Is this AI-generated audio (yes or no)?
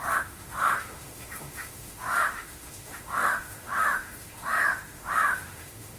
yes